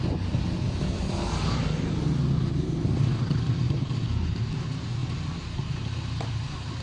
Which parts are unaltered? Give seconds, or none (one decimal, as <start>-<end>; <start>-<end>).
0.0-6.8